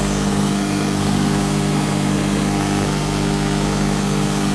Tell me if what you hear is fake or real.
fake